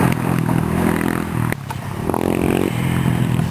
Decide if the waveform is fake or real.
real